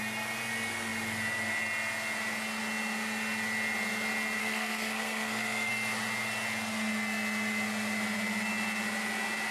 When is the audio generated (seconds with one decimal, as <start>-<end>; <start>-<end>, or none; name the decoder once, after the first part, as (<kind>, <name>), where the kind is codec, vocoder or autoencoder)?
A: 4.4-5.7 (codec, SNAC)